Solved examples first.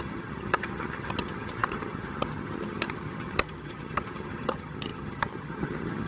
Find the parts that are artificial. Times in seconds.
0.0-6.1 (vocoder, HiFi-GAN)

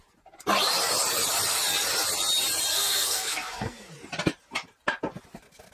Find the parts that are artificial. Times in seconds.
2.7-3.9 (codec, SNAC)

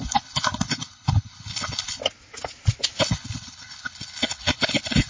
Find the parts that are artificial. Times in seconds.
0.0-2.0 (codec, HILCodec); 3.0-5.1

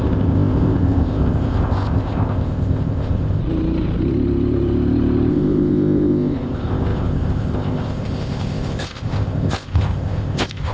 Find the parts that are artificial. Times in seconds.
0.0-3.4 (codec, ZipCodec); 5.3-10.7

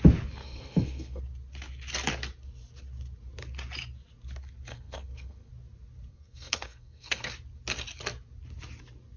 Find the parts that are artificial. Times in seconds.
0.4-1.2 (codec, SNAC); 4.7-5.5; 6.1-7.3